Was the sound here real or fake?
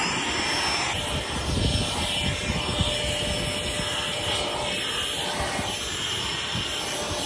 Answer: real